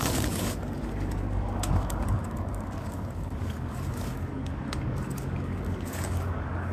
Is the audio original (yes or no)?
no